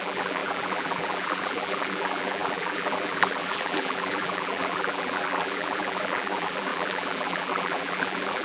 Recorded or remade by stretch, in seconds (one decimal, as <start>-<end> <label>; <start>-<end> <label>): 0.0-8.4 remade